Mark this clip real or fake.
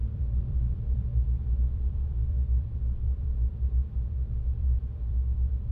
fake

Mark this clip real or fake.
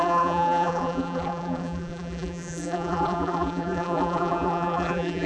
fake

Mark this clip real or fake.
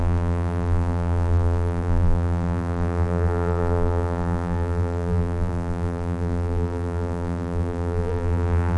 fake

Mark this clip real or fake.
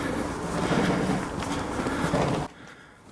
real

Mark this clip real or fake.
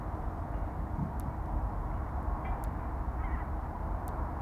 real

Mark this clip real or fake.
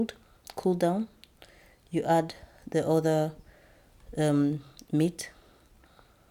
real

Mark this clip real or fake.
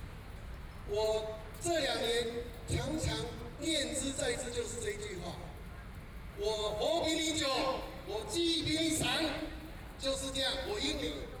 real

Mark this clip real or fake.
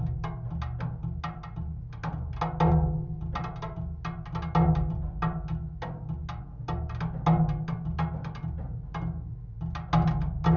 real